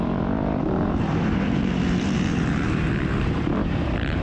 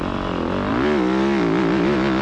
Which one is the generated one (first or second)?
first